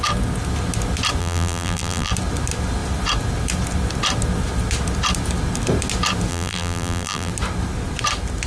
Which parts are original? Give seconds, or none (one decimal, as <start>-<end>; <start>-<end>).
0.0-1.2; 2.1-6.3; 7.3-8.5